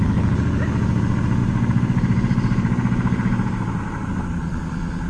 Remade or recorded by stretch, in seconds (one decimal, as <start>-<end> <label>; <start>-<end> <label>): 0.0-1.4 recorded; 1.4-3.8 remade; 3.8-5.1 recorded

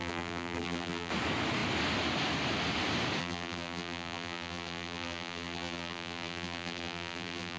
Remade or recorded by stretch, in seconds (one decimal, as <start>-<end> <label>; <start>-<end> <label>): 0.0-1.1 remade; 1.1-3.2 recorded; 3.2-7.6 remade

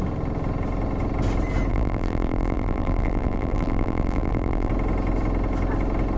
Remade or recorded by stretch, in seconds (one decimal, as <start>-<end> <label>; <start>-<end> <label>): 0.0-1.7 recorded; 1.7-4.7 remade; 4.7-6.2 recorded

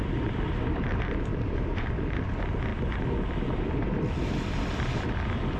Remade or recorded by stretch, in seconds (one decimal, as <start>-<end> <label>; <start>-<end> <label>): 0.0-1.3 recorded; 1.3-1.9 remade; 1.9-5.6 recorded

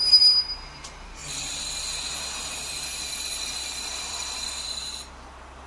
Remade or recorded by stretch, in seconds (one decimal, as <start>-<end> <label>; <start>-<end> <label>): 0.0-1.2 recorded; 1.2-1.8 remade; 1.8-3.1 recorded; 3.1-4.8 remade; 4.8-5.7 recorded

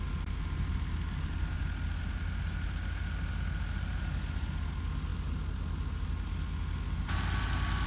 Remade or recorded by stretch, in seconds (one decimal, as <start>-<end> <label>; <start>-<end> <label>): 0.0-7.9 recorded